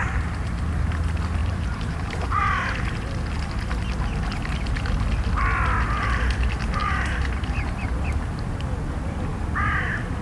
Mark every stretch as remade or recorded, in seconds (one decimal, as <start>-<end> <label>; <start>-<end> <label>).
0.0-1.4 recorded; 1.4-2.4 remade; 2.4-6.8 recorded; 6.8-8.2 remade; 8.2-10.2 recorded